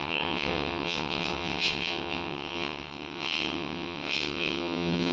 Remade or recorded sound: remade